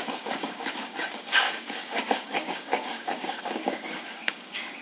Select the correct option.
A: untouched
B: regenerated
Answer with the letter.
B